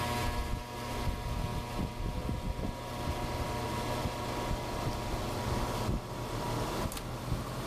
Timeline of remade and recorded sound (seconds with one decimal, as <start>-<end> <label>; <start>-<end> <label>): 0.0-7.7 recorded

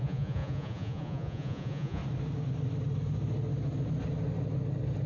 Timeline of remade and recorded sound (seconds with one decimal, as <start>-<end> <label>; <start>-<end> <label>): 0.0-2.0 remade; 2.0-5.1 recorded

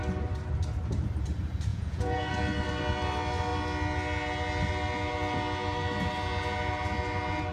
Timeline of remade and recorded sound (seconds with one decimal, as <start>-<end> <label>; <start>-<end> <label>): 0.0-1.7 recorded; 1.7-2.3 remade; 2.3-7.5 recorded

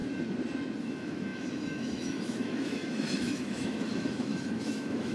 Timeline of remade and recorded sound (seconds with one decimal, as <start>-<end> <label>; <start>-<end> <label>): 0.0-0.8 recorded; 0.8-5.1 remade

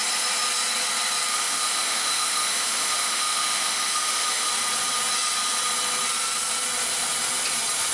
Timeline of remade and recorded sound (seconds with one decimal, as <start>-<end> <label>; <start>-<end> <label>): 0.0-1.3 recorded; 1.3-4.5 remade; 4.5-7.9 recorded

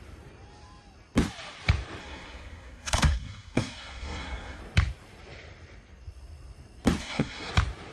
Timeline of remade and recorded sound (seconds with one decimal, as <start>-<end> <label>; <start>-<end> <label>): 0.0-2.0 recorded; 2.0-4.6 remade; 4.6-7.0 recorded; 7.0-7.5 remade; 7.5-7.9 recorded

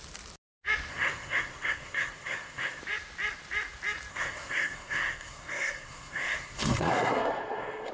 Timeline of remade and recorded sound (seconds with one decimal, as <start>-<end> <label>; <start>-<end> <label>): 0.0-0.9 recorded; 0.9-2.8 remade; 2.8-4.1 recorded; 4.1-7.9 remade

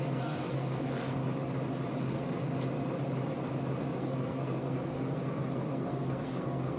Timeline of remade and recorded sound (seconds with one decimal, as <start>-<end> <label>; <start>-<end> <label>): 0.0-1.2 remade; 1.2-2.0 recorded; 2.0-2.5 remade; 2.5-3.9 recorded; 3.9-6.8 remade